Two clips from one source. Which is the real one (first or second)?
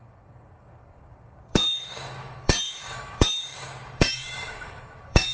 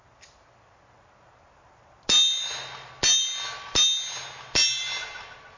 second